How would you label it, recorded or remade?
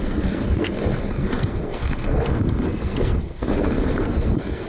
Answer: remade